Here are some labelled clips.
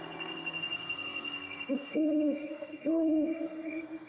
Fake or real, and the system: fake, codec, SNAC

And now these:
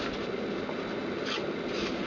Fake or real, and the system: real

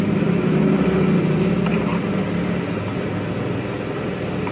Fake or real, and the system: real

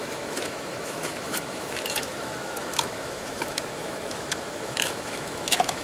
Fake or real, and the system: fake, autoencoder, DAC-VAE